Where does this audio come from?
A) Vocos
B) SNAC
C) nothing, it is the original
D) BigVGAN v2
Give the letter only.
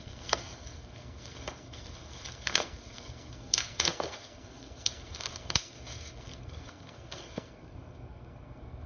B